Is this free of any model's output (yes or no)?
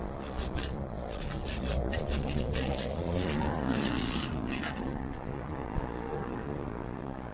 no